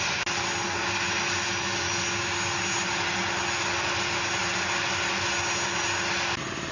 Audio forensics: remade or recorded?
recorded